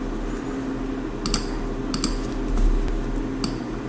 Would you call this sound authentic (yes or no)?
yes